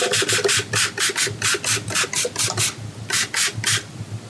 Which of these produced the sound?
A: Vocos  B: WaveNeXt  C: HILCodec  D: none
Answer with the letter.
D